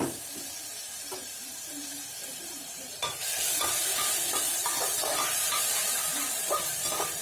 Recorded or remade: remade